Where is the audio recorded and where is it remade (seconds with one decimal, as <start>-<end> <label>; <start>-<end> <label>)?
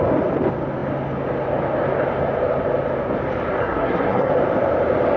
0.0-3.6 recorded; 3.6-4.3 remade; 4.3-5.2 recorded